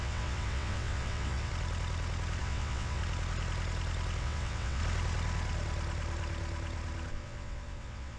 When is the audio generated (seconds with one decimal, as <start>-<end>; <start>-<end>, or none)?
0.0-1.5; 2.4-3.0; 4.2-4.8; 7.1-8.2